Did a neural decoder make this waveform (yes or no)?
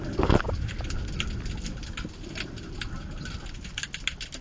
no